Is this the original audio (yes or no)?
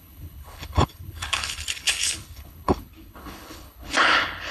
no